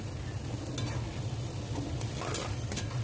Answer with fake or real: real